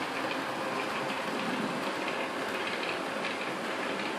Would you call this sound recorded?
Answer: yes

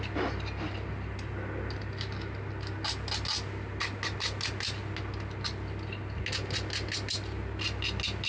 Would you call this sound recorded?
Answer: yes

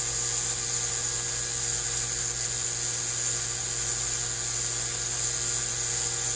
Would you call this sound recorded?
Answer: yes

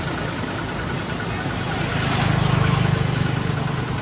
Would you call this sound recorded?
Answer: yes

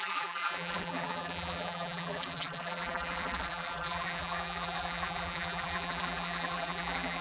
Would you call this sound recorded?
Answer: no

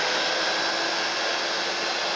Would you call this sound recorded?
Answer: yes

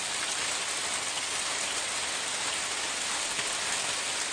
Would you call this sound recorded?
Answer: yes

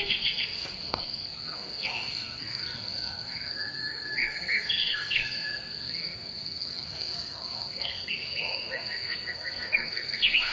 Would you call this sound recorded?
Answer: no